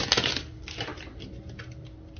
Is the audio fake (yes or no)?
no